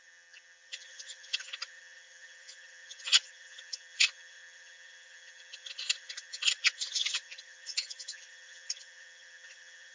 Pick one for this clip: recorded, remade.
remade